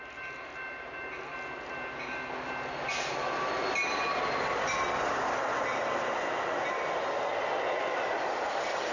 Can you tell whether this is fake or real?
real